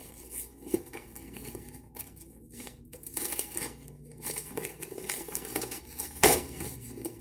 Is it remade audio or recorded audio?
remade